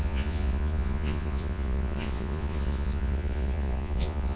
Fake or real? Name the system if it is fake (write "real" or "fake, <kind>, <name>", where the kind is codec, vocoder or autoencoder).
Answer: fake, vocoder, Vocos